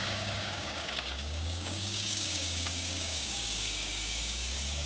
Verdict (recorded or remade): remade